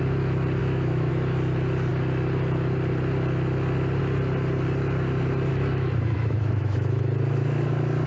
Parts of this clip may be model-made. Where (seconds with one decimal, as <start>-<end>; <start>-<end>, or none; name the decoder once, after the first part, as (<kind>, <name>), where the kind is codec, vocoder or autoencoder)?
0.6-1.1 (autoencoder, DAC-VAE); 5.5-7.0